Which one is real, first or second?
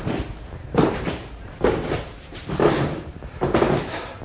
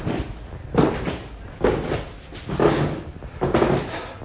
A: second